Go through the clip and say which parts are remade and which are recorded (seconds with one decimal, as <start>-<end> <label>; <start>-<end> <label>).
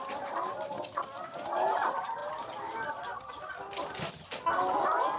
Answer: 0.0-5.2 recorded